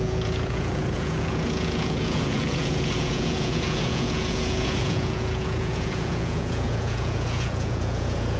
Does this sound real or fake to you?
fake